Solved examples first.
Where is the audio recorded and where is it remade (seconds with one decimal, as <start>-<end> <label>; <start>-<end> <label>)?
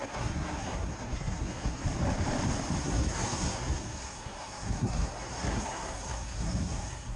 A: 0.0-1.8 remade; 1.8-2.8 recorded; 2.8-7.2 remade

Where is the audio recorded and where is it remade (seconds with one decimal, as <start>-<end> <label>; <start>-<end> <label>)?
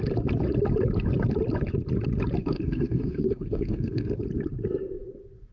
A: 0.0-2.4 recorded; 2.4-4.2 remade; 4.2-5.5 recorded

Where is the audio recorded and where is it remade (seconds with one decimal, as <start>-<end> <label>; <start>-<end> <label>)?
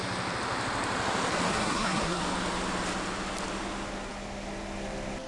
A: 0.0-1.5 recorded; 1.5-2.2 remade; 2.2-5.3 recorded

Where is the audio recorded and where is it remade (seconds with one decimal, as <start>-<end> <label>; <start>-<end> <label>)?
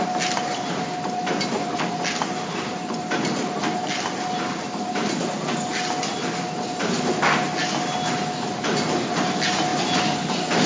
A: 0.0-10.7 recorded